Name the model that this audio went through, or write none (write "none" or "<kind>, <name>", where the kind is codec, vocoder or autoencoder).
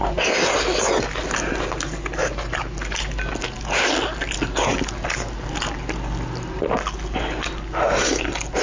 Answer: none